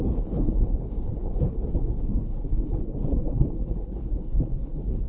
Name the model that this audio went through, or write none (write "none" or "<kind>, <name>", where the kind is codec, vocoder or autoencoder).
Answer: codec, HILCodec